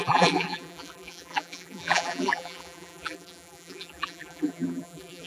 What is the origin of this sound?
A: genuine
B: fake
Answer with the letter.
B